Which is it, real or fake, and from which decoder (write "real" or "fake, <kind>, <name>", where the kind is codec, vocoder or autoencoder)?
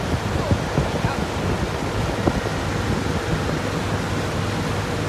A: real